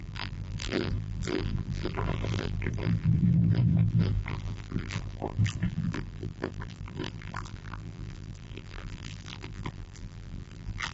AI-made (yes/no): yes